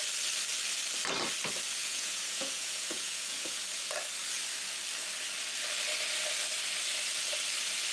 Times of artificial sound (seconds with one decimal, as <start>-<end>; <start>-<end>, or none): 1.8-3.6